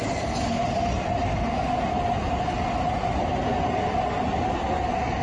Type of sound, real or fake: real